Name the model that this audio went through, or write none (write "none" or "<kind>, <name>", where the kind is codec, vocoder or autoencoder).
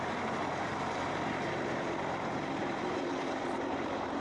vocoder, BigVGAN v2